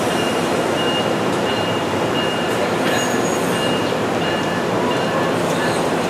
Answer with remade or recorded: remade